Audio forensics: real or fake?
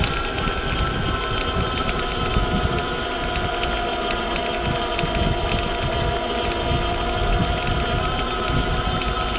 real